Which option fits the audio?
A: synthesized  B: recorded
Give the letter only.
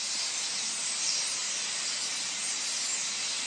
B